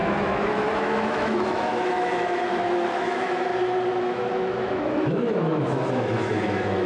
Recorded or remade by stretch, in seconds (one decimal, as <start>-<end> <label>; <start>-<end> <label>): 0.0-3.5 remade; 3.5-4.0 recorded; 4.0-6.9 remade